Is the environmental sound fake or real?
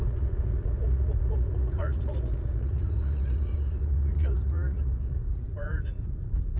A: fake